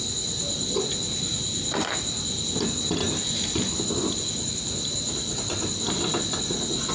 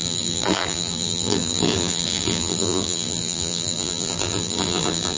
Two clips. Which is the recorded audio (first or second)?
first